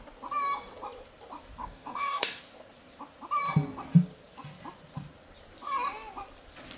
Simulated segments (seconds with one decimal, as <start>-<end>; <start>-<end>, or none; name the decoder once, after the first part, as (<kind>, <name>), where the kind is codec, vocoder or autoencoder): 1.6-2.4 (codec, DAC)